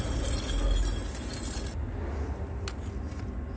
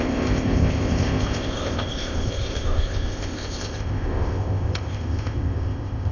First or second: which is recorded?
first